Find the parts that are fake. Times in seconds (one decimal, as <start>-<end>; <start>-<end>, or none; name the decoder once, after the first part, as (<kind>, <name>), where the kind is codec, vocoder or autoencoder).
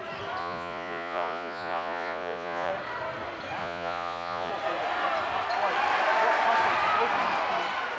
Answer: 0.4-2.7 (vocoder, Vocos); 3.6-4.5